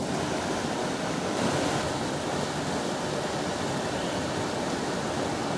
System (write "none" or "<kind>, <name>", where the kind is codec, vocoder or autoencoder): none